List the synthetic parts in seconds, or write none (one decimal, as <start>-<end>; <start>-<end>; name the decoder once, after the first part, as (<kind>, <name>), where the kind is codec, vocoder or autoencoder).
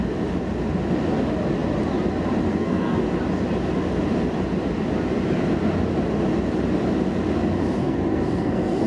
2.5-3.0 (codec, SNAC); 7.8-8.9